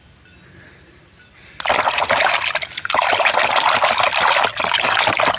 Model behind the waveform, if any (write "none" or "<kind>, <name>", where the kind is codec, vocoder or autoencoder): none